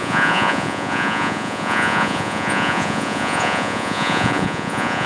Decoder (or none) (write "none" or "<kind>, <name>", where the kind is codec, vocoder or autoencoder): vocoder, Vocos